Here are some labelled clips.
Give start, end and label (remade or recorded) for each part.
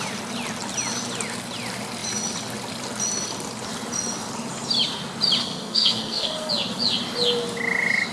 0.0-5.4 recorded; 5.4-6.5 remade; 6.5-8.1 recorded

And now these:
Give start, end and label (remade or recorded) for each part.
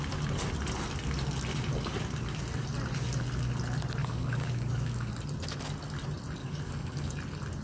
0.0-4.0 recorded; 4.0-5.1 remade; 5.1-6.4 recorded; 6.4-7.1 remade; 7.1-7.6 recorded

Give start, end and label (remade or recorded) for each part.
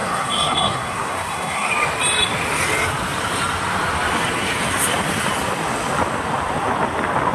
0.0-1.7 remade; 1.7-7.3 recorded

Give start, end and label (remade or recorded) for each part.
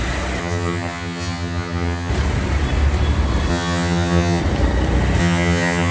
0.0-0.4 recorded; 0.4-2.1 remade; 2.1-3.5 recorded; 3.5-4.4 remade; 4.4-5.2 recorded; 5.2-5.9 remade